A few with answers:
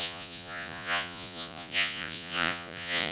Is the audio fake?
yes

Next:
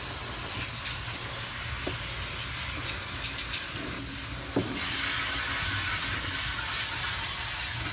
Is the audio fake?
no